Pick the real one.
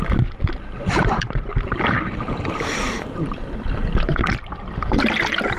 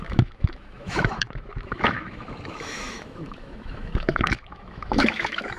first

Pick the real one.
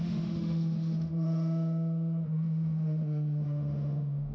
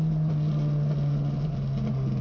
second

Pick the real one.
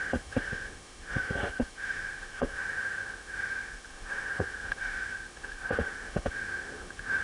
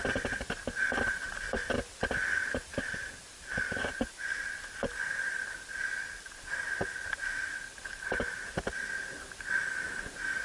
second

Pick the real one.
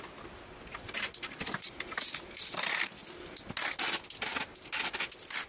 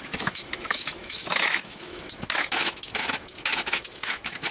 first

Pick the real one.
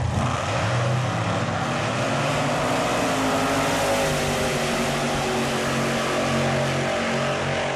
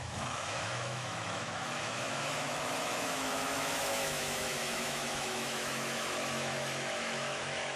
first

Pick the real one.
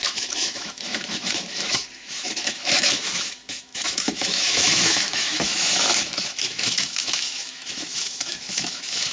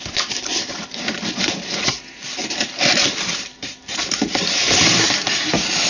second